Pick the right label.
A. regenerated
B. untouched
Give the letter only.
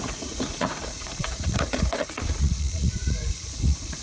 A